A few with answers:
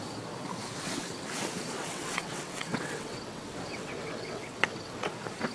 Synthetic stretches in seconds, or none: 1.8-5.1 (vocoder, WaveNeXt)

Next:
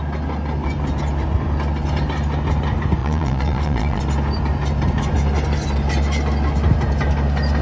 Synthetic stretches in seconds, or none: 3.0-4.0 (vocoder, Vocos)